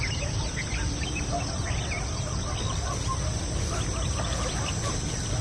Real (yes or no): yes